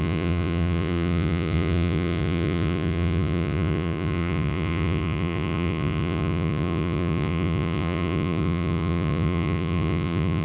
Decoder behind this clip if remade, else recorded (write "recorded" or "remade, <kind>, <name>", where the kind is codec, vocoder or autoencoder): remade, vocoder, Vocos